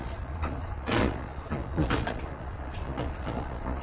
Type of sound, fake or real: fake